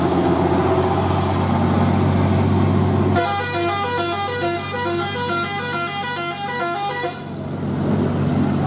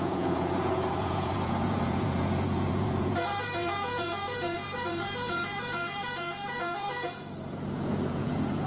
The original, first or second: first